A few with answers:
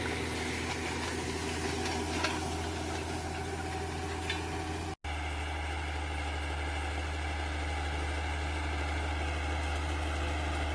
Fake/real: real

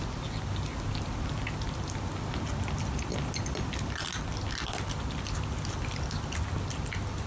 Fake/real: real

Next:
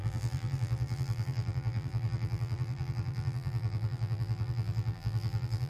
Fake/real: fake